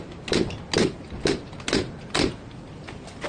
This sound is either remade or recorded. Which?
recorded